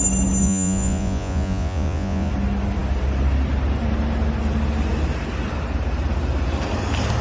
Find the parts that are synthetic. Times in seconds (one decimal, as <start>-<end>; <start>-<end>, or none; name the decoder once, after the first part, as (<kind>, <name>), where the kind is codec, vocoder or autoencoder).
0.4-2.3 (vocoder, Vocos)